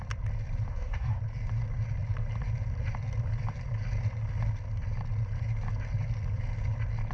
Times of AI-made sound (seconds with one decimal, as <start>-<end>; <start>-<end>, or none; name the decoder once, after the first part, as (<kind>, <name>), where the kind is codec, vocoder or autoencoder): 0.7-1.2 (codec, SNAC)